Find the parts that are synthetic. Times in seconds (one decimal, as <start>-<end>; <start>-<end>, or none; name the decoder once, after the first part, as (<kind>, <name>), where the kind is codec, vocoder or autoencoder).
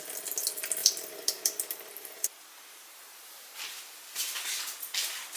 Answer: 0.8-3.8 (vocoder, BigVGAN v2)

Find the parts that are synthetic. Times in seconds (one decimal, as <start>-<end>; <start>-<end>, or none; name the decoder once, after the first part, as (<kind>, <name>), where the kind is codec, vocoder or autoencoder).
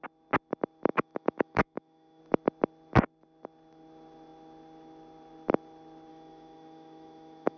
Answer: 0.9-2.2 (autoencoder, DAC-VAE); 6.1-7.6